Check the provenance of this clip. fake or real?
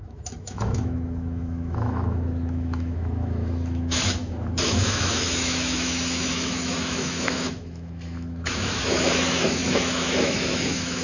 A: fake